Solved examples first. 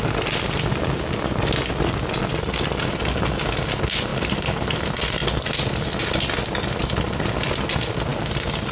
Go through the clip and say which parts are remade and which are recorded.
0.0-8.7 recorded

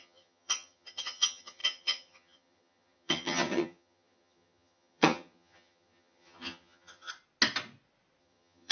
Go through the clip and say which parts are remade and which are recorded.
0.0-7.1 remade; 7.1-8.2 recorded; 8.2-8.7 remade

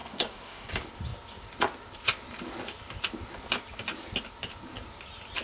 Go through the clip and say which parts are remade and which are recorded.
0.0-0.7 remade; 0.7-5.4 recorded